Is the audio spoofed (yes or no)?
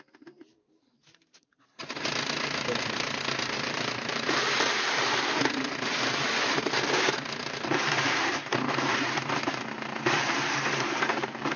yes